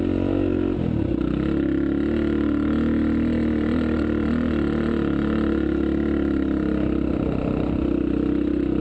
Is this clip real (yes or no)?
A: yes